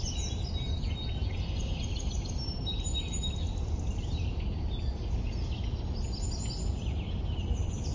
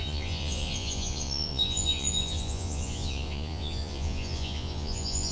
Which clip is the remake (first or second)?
second